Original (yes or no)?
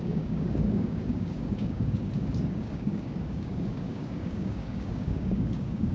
no